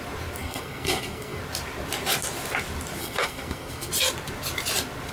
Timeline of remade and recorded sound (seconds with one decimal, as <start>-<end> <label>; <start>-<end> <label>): 0.0-0.4 recorded; 0.4-1.4 remade; 1.4-3.0 recorded; 3.0-3.9 remade; 3.9-5.1 recorded